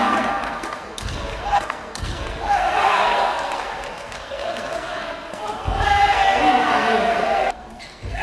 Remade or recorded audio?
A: remade